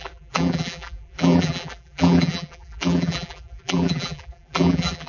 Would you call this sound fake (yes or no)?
yes